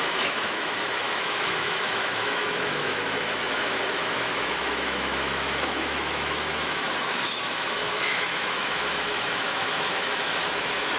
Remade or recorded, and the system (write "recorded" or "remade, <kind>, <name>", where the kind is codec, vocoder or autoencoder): remade, autoencoder, DAC-VAE